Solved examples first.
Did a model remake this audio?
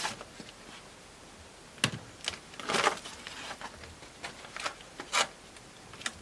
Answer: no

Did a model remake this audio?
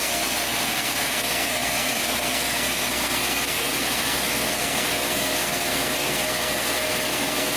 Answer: yes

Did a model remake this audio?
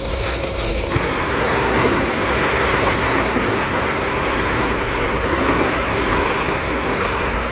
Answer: yes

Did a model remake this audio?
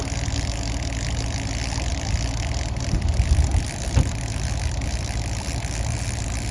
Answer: no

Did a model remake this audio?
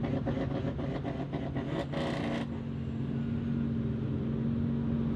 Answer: no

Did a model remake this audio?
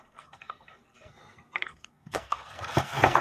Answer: yes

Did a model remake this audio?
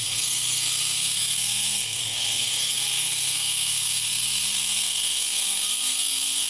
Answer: yes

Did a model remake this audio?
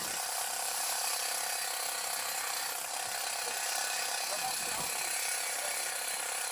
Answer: no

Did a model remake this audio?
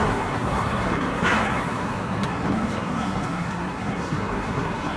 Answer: yes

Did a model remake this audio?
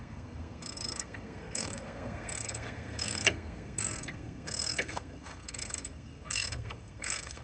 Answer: yes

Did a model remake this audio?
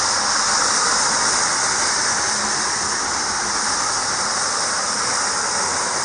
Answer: no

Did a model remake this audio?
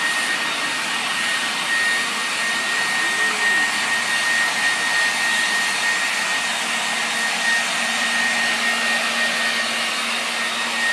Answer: no